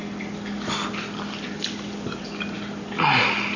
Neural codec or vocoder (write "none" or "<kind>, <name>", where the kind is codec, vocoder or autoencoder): none